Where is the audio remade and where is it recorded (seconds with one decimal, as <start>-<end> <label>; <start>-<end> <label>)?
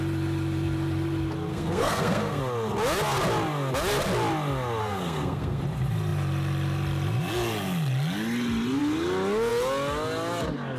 0.0-1.5 recorded; 1.5-2.4 remade; 2.4-4.8 recorded; 4.8-5.6 remade; 5.6-10.8 recorded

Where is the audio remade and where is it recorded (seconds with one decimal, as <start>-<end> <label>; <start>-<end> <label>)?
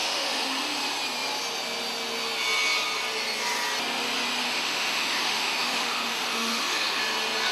0.0-0.6 remade; 0.6-4.4 recorded; 4.4-7.0 remade; 7.0-7.5 recorded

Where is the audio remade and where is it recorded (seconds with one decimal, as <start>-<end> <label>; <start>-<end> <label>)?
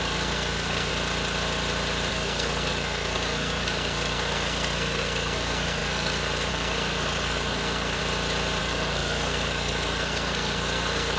0.0-0.9 remade; 0.9-2.1 recorded; 2.1-8.0 remade; 8.0-8.6 recorded; 8.6-11.2 remade